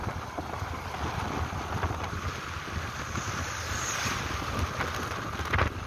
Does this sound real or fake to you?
real